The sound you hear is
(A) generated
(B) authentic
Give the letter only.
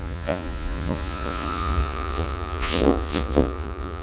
A